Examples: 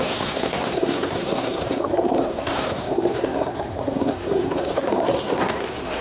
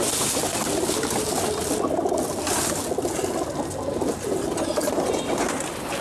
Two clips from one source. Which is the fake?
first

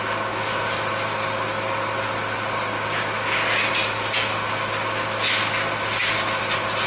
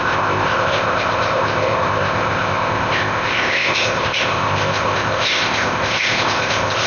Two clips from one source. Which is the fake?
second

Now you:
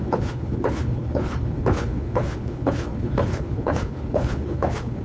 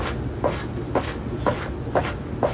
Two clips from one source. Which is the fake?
first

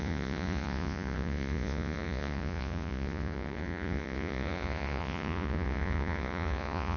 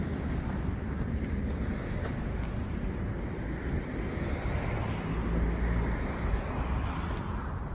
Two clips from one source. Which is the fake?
first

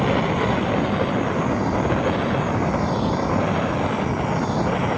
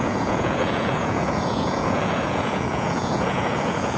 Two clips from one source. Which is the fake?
second